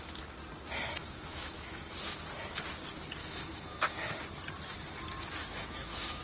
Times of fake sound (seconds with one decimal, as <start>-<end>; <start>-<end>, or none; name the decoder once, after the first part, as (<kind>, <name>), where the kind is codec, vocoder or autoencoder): 1.0-1.8 (autoencoder, DAC-VAE); 3.2-4.2; 5.4-6.2